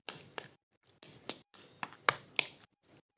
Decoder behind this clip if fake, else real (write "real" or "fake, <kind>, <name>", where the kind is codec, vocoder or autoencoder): real